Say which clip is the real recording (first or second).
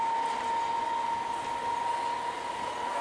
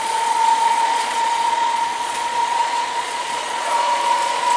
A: first